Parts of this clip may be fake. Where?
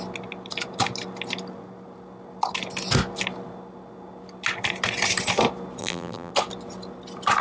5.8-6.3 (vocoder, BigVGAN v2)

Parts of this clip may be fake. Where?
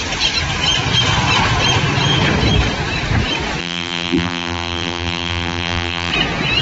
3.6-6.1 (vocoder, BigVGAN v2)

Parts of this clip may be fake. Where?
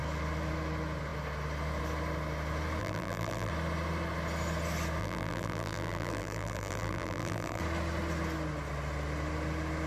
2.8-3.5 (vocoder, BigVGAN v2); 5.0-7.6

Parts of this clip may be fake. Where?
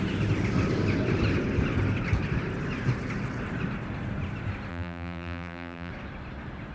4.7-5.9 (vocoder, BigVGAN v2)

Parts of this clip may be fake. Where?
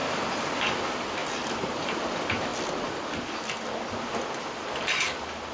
1.2-1.9 (vocoder, BigVGAN v2)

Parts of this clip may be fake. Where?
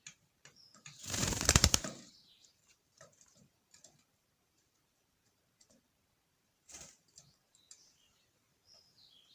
0.0-9.3 (vocoder, BigVGAN v2)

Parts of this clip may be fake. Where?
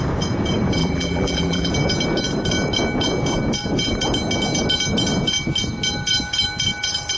0.8-1.7 (vocoder, BigVGAN v2)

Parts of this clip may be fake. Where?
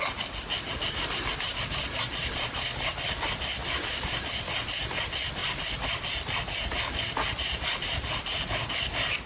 1.5-2.9 (vocoder, BigVGAN v2)